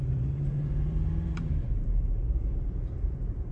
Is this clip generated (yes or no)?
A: yes